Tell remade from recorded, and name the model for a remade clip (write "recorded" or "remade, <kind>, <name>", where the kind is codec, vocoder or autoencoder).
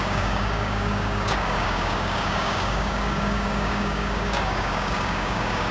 remade, codec, DAC